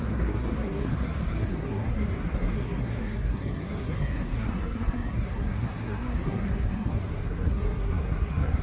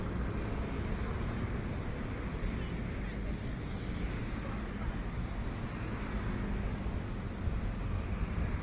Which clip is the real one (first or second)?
second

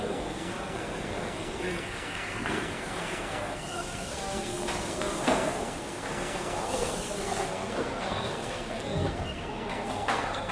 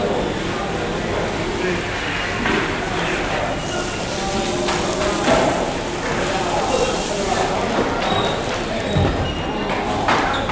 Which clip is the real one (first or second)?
second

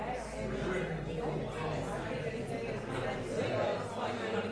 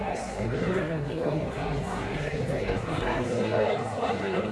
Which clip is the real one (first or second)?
first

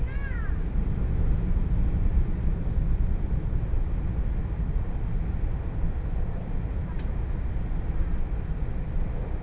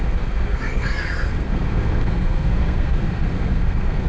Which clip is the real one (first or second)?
first